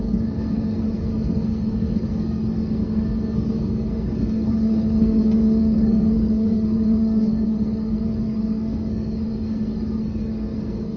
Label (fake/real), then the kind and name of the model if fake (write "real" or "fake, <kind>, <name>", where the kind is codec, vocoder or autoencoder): fake, codec, SNAC